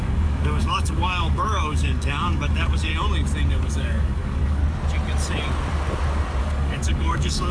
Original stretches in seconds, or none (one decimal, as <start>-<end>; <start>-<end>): 2.9-3.5; 4.6-6.4